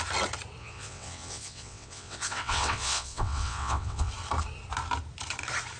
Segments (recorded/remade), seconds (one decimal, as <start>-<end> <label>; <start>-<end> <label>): 0.0-0.6 recorded; 0.6-4.1 remade; 4.1-5.8 recorded